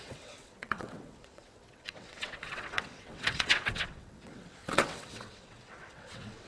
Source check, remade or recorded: remade